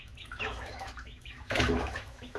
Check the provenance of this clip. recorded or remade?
remade